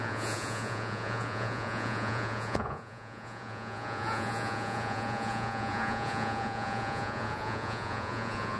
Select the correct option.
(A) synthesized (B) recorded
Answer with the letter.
A